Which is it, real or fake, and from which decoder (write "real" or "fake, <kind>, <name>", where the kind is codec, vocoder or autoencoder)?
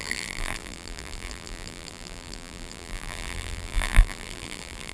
fake, vocoder, BigVGAN v2